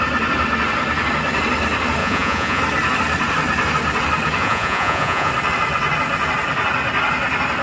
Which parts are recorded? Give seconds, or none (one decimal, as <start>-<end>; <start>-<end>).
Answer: 0.0-2.0; 2.6-4.4; 5.3-7.6